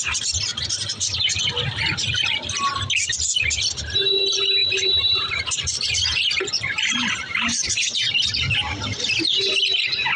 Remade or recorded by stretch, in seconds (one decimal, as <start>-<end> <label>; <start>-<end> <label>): 0.0-0.5 recorded; 0.5-2.8 remade; 2.8-4.6 recorded; 4.6-9.6 remade; 9.6-10.2 recorded